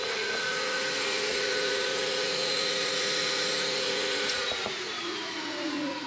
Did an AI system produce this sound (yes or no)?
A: yes